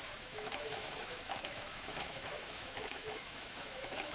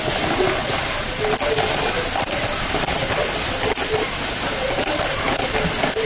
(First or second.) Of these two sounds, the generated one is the first